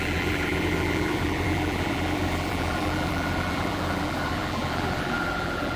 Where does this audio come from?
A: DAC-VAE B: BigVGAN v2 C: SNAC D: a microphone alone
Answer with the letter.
B